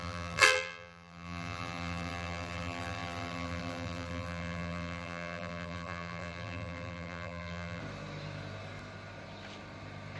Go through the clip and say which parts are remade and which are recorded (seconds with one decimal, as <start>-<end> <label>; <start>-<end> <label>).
0.0-7.8 remade; 7.8-10.2 recorded